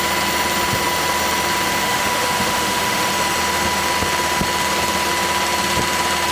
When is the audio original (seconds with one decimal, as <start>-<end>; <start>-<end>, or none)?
0.0-1.8; 3.1-6.3